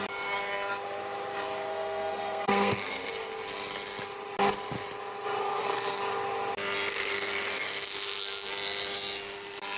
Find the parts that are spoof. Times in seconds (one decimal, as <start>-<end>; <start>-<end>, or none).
1.7-3.1; 5.4-6.0; 6.9-8.5